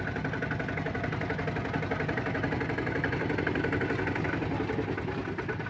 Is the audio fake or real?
real